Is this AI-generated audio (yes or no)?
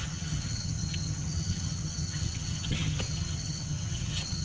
yes